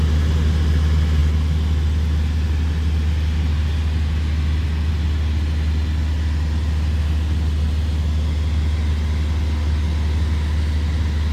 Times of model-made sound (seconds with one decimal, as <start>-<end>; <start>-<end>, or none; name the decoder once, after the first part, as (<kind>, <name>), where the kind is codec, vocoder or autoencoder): none